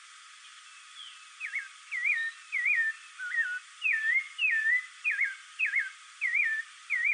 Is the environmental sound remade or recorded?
recorded